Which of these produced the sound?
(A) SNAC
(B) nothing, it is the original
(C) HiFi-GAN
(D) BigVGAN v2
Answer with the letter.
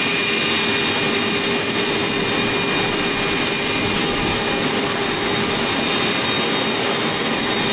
B